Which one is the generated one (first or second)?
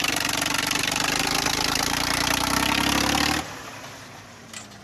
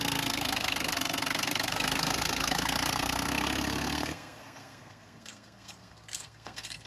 second